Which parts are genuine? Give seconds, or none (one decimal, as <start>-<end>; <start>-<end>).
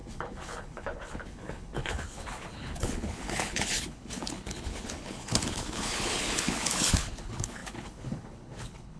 none